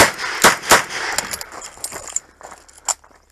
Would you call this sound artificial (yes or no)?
no